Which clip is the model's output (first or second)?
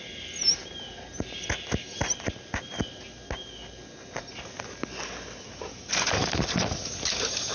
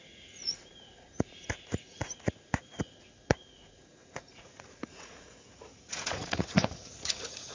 second